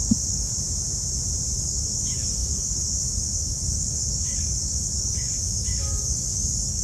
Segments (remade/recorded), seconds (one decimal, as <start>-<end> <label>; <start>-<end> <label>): 0.0-0.5 remade; 0.5-1.6 recorded; 1.6-6.8 remade